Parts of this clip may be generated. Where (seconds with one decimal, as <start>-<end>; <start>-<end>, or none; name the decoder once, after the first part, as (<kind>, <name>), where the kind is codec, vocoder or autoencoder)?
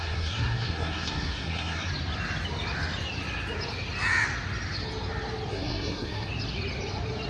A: 0.0-1.9 (codec, SNAC); 5.5-6.3